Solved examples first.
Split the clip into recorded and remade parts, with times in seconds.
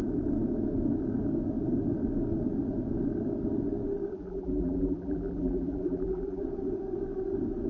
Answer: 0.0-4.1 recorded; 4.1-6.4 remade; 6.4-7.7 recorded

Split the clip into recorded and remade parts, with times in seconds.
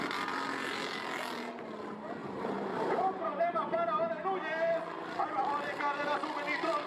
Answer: 0.0-2.2 recorded; 2.2-4.0 remade; 4.0-6.9 recorded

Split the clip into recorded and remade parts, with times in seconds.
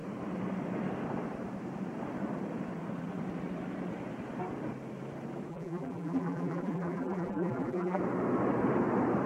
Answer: 0.0-5.5 recorded; 5.5-8.0 remade; 8.0-9.3 recorded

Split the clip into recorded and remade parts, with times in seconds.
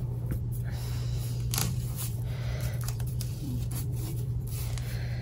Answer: 0.0-0.5 remade; 0.5-1.6 recorded; 1.6-4.7 remade; 4.7-5.2 recorded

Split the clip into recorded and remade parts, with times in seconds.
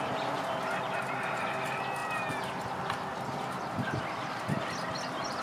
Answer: 0.0-5.4 recorded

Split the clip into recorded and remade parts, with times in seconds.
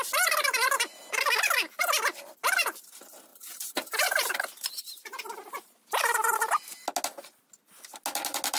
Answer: 0.0-3.3 recorded; 3.3-6.5 remade; 6.5-8.6 recorded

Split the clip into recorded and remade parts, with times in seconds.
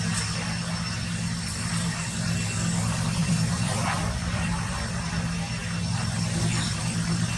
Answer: 0.0-3.2 recorded; 3.2-5.0 remade; 5.0-5.6 recorded; 5.6-6.8 remade; 6.8-7.4 recorded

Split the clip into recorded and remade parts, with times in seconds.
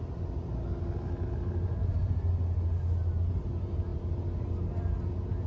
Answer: 0.0-5.5 recorded